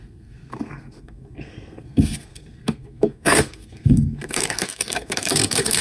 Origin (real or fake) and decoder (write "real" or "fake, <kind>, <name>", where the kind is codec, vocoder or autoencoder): fake, codec, SNAC